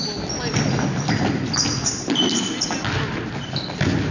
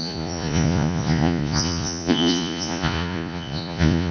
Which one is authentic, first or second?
first